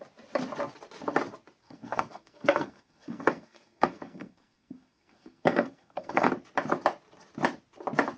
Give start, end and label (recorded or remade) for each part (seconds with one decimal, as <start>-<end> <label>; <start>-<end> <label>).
0.0-1.6 recorded; 1.6-6.3 remade; 6.3-8.2 recorded